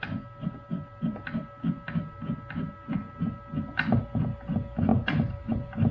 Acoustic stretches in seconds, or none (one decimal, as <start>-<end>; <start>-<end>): 0.0-5.9